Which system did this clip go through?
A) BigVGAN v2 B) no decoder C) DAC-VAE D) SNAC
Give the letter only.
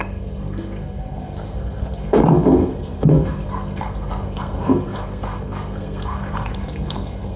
D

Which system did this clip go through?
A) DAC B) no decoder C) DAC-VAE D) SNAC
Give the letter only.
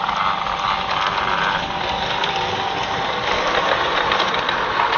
B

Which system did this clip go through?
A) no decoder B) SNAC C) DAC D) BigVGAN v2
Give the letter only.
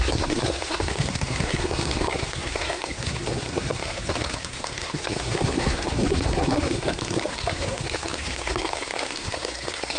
B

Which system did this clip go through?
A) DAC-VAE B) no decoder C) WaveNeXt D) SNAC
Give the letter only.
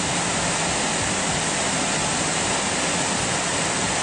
B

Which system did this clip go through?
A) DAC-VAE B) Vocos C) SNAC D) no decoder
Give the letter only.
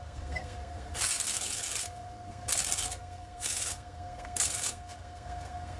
C